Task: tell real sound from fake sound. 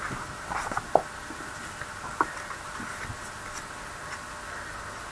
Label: real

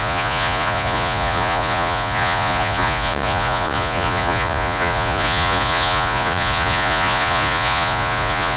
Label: fake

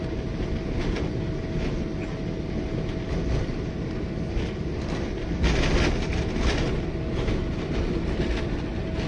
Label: real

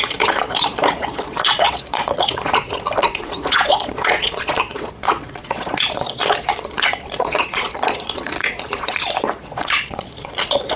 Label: fake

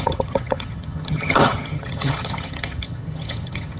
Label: fake